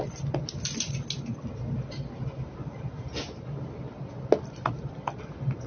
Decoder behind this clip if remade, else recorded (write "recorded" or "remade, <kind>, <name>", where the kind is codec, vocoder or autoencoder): recorded